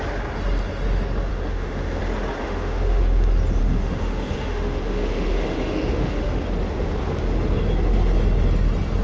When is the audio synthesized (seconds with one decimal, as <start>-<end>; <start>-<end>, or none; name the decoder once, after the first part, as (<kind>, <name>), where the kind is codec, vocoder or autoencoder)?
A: 1.3-2.0 (autoencoder, DAC-VAE); 2.4-3.0; 3.6-6.4